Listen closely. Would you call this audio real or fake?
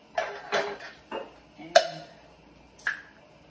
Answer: real